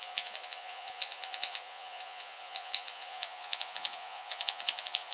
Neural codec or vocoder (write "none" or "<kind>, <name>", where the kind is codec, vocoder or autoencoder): vocoder, Vocos